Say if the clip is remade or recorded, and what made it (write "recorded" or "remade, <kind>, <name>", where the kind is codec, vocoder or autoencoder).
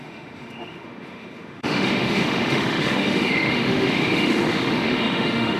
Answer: remade, autoencoder, DAC-VAE